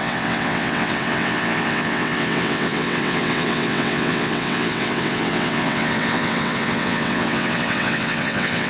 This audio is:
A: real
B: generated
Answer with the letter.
B